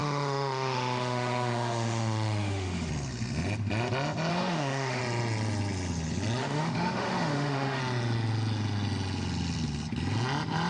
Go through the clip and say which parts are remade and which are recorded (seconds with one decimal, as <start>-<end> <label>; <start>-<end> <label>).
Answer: 0.0-2.9 remade; 2.9-4.3 recorded; 4.3-5.0 remade; 5.0-6.4 recorded; 6.4-7.8 remade; 7.8-10.7 recorded